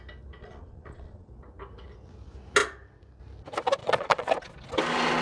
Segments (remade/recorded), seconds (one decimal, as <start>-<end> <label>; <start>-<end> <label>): 0.0-0.4 recorded; 0.4-1.3 remade; 1.3-3.8 recorded; 3.8-4.3 remade; 4.3-5.2 recorded